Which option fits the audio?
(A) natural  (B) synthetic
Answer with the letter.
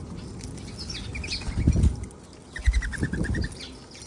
A